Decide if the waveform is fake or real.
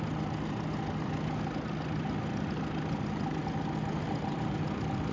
real